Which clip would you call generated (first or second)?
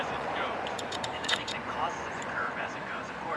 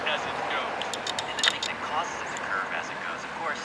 first